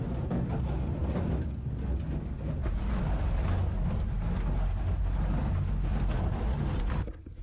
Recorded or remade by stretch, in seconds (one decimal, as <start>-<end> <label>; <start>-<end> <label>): 0.0-7.4 recorded